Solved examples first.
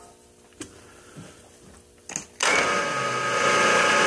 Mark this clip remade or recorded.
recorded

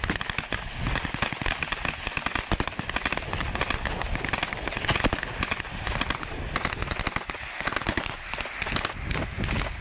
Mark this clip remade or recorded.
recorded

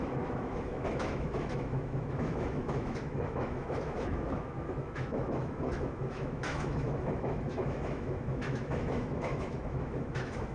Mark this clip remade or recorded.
remade